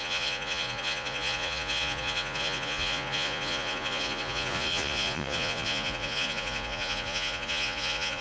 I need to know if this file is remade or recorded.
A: remade